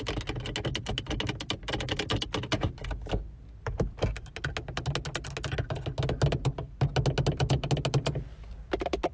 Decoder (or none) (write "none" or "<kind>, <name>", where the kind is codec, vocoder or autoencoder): none